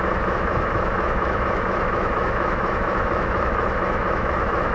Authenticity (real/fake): fake